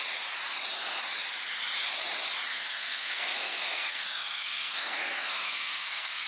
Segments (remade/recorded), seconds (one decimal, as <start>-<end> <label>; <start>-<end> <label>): 0.0-2.5 recorded; 2.5-6.3 remade